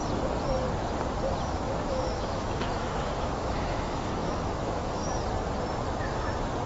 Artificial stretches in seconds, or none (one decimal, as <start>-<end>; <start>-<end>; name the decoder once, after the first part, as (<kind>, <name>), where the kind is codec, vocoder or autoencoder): 1.5-5.0 (autoencoder, DAC-VAE)